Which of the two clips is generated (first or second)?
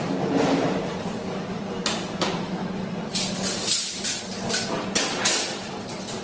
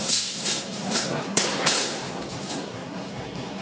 second